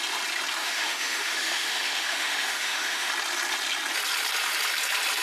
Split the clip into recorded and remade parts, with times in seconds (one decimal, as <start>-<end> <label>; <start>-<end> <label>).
0.0-0.6 recorded; 0.6-3.1 remade; 3.1-5.2 recorded